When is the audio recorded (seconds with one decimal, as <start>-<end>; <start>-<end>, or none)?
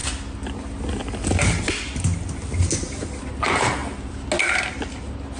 0.0-5.4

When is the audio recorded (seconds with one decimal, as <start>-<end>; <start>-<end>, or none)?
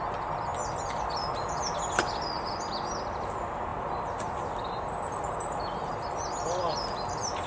0.0-7.5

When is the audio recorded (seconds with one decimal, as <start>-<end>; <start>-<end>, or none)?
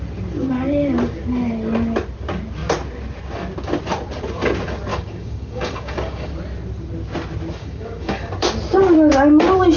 0.0-4.9; 6.3-7.6; 8.3-9.8